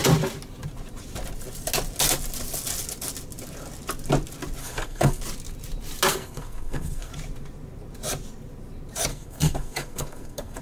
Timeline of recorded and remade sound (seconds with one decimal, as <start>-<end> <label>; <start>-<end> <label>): 0.0-4.6 recorded; 4.6-5.2 remade; 5.2-6.1 recorded; 6.1-7.1 remade; 7.1-9.1 recorded; 9.1-10.6 remade